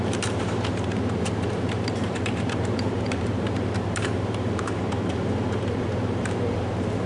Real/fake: fake